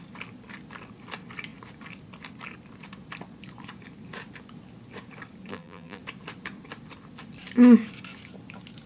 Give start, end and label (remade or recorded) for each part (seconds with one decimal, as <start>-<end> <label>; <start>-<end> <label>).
0.0-5.5 recorded; 5.5-6.0 remade; 6.0-8.9 recorded